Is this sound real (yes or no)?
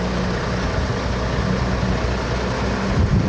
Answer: yes